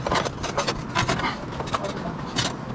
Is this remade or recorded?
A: recorded